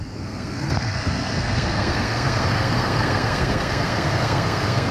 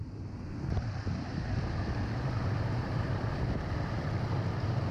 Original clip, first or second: second